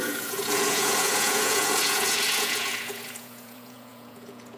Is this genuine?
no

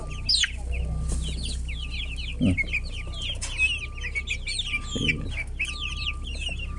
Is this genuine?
yes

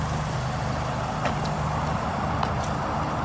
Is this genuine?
yes